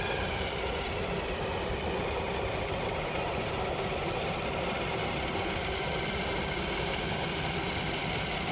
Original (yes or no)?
yes